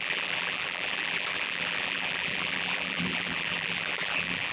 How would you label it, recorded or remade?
remade